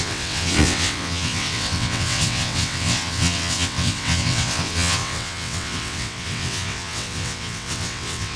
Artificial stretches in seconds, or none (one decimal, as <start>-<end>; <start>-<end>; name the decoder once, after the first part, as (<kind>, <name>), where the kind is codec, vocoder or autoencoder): 0.0-8.4 (vocoder, WaveNeXt)